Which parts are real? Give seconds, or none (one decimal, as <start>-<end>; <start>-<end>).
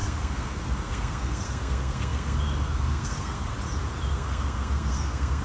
3.5-4.1